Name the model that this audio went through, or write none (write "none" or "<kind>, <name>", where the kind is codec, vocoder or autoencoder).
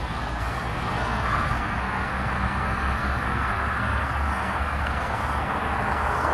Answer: codec, SNAC